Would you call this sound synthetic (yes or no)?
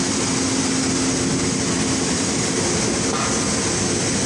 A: no